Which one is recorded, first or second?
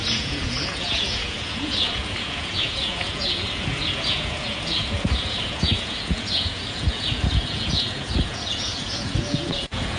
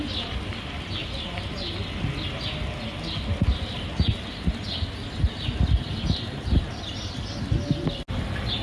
second